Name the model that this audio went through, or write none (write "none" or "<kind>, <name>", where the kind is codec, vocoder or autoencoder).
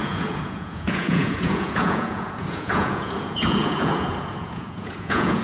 vocoder, Vocos